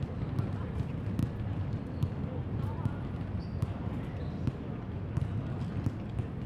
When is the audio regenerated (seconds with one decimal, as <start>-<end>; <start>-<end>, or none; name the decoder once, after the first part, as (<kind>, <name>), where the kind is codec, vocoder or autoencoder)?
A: none